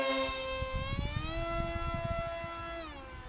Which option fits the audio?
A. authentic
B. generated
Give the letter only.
A